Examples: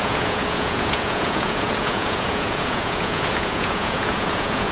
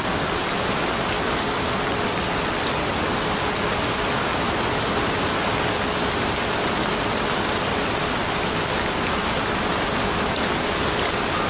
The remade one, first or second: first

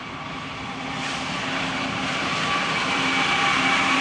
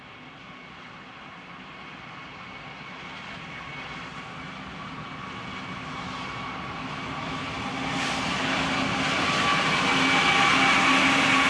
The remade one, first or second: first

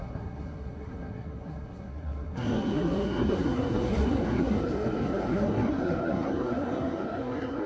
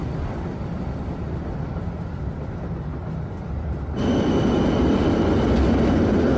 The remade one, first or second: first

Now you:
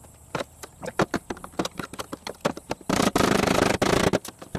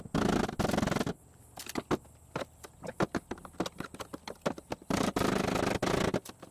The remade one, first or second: first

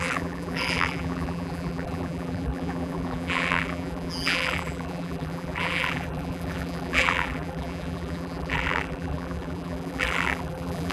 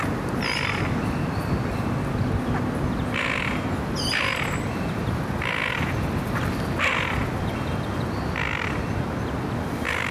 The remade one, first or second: first